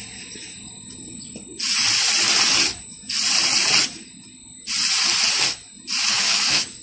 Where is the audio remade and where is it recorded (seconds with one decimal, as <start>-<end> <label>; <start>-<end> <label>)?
0.0-6.1 recorded; 6.1-6.8 remade